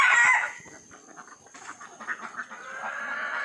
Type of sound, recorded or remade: recorded